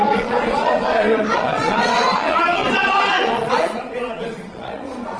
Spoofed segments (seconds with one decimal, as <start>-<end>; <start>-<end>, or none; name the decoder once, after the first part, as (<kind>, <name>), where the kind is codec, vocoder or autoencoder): 0.0-5.2 (vocoder, Vocos)